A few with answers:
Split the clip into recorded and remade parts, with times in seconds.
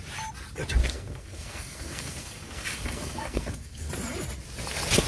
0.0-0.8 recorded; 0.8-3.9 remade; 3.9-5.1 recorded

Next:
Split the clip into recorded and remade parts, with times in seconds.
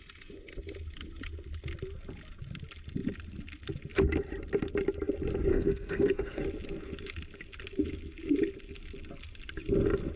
0.0-5.5 recorded; 5.5-6.4 remade; 6.4-10.2 recorded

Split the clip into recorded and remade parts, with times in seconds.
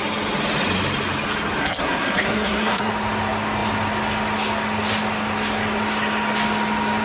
0.0-1.6 recorded; 1.6-2.9 remade; 2.9-7.0 recorded